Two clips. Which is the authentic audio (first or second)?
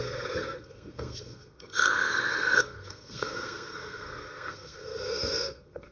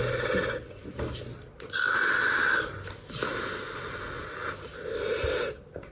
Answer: second